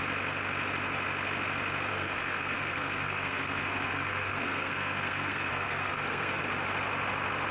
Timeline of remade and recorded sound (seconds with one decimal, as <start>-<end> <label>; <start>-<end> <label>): 0.0-1.9 recorded; 1.9-6.4 remade; 6.4-7.5 recorded